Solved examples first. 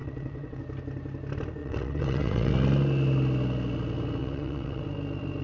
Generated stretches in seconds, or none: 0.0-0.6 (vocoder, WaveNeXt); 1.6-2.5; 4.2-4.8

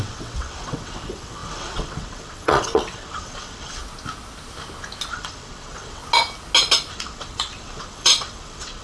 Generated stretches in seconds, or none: 0.0-3.8 (vocoder, WaveNeXt); 5.1-6.0; 6.9-8.8

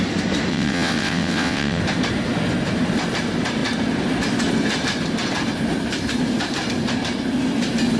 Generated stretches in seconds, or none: 0.5-1.8 (vocoder, WaveNeXt)

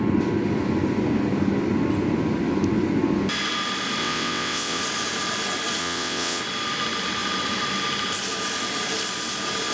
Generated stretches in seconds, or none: 4.0-4.8 (vocoder, WaveNeXt); 5.8-6.4

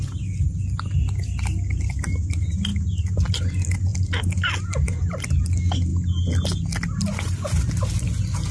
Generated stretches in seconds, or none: none

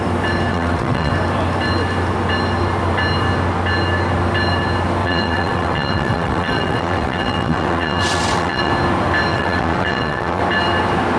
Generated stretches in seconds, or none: 0.5-1.1 (vocoder, WaveNeXt); 5.0-8.7; 9.3-10.4

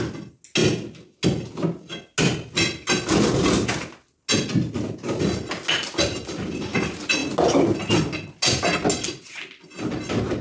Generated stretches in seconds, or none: none

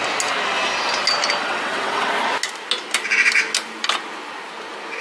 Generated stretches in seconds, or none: 1.4-2.1 (vocoder, WaveNeXt)